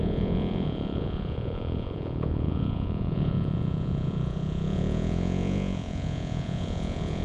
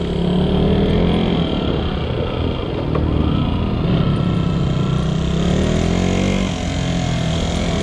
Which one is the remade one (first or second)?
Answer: first